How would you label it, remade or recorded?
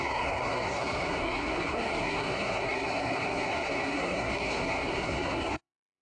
remade